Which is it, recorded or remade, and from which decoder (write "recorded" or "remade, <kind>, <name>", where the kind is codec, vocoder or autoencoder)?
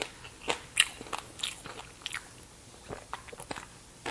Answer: recorded